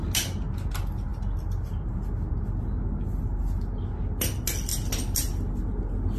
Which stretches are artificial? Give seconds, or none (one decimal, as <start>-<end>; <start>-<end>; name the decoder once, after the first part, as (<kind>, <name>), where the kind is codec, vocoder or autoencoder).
none